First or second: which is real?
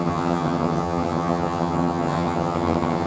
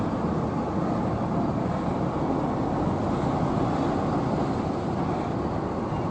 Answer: second